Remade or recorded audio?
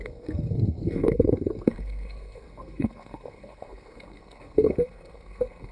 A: remade